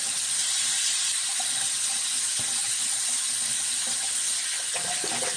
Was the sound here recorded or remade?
remade